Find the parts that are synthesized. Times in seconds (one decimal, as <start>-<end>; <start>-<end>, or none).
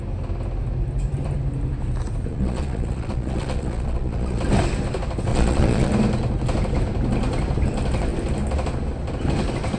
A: 2.3-4.4; 5.3-5.9